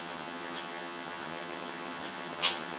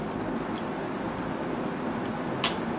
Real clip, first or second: second